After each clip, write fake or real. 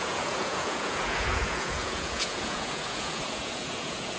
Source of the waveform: fake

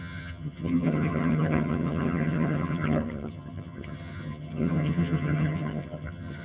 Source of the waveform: fake